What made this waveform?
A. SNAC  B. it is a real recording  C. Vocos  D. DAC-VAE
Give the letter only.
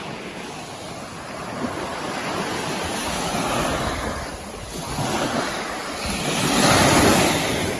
B